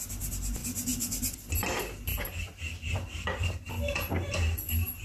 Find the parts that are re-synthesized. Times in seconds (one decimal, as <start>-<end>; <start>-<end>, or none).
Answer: none